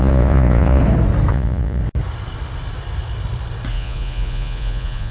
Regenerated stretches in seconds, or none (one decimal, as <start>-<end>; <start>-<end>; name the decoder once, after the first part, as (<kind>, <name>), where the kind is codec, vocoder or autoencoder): 0.0-0.8 (vocoder, Vocos); 1.3-1.8; 3.7-5.1